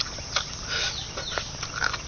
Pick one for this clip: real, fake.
real